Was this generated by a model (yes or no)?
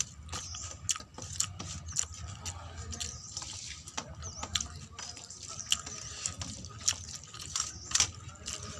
no